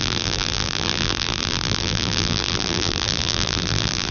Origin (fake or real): fake